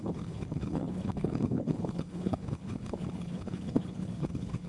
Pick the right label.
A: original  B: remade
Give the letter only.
B